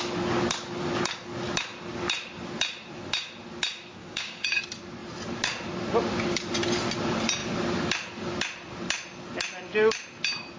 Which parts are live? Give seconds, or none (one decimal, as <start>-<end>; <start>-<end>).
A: 0.0-4.0; 4.6-10.6